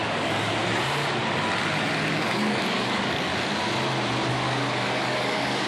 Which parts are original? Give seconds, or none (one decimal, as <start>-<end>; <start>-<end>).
0.6-2.1; 3.3-4.3